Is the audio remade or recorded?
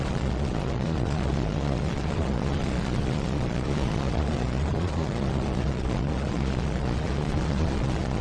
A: remade